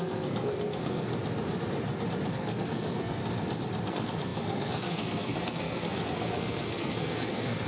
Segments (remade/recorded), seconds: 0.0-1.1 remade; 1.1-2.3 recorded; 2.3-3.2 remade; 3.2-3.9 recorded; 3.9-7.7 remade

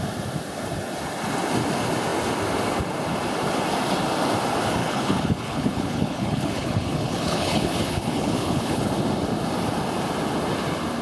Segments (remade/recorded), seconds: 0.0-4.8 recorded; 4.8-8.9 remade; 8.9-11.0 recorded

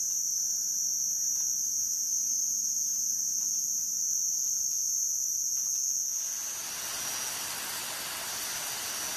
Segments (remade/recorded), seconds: 0.0-9.2 recorded